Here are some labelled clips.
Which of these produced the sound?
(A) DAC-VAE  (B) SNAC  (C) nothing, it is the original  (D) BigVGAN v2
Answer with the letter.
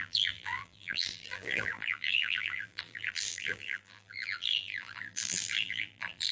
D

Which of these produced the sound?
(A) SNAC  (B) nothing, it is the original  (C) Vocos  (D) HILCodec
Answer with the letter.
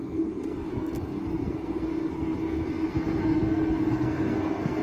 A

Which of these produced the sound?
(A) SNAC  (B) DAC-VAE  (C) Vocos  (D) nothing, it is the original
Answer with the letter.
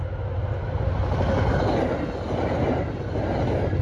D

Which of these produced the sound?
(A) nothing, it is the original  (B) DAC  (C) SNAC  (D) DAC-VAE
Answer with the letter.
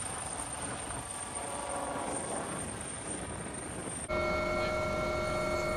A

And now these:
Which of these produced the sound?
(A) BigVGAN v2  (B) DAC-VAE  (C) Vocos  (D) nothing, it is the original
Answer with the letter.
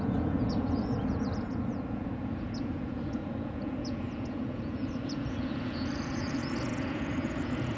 C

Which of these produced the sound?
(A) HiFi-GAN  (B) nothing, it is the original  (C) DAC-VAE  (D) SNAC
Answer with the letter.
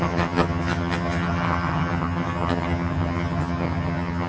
A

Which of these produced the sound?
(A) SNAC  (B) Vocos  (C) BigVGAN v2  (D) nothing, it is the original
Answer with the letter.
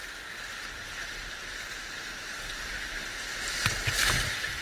D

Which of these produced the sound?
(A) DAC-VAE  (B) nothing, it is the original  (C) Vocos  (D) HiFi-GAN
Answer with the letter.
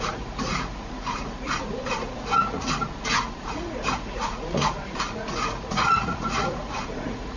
C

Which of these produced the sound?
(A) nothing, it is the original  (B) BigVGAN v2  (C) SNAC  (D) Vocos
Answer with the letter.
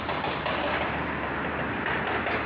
A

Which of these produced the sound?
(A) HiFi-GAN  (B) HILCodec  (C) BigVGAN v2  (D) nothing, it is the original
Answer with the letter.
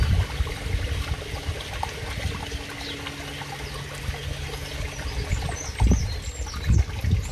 D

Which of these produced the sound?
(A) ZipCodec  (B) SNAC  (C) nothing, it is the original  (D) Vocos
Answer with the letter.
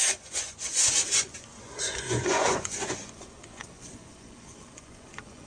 D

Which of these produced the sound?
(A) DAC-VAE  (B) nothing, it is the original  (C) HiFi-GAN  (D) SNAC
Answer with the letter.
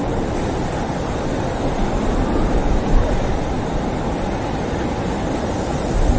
B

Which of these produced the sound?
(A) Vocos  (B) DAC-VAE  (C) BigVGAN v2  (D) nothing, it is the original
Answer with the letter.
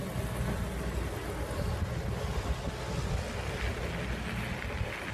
D